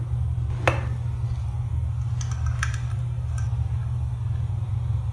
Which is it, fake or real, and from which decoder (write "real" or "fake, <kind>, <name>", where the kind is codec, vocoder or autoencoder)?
real